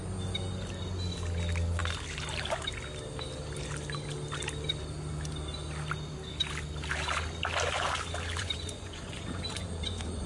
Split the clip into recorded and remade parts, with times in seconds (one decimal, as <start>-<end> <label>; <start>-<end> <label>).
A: 0.0-8.4 recorded; 8.4-10.3 remade